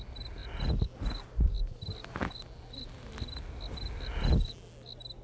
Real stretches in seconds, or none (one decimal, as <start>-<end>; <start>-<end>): 0.0-5.2